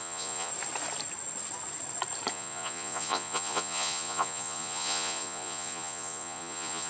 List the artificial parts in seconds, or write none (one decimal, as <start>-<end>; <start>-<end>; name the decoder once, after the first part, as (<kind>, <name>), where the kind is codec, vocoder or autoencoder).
0.0-0.5 (vocoder, Vocos); 2.3-6.9